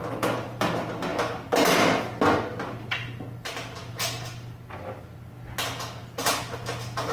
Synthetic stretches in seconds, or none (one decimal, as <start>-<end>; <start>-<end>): none